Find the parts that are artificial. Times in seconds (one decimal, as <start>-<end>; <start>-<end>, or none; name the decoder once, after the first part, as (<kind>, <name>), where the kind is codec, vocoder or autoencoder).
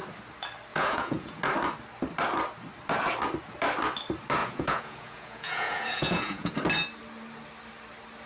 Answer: 0.7-1.4 (vocoder, Vocos); 4.4-6.5